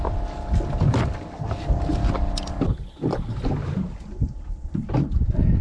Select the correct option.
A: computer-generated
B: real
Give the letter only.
B